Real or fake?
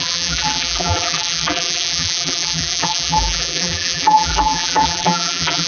fake